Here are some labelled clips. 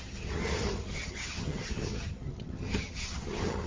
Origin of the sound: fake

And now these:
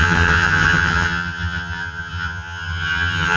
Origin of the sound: fake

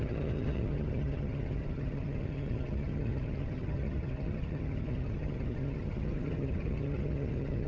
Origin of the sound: fake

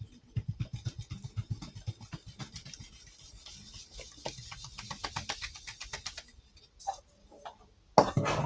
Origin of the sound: real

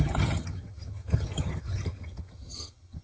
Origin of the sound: fake